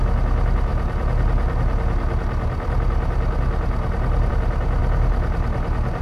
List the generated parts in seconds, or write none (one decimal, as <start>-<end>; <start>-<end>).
none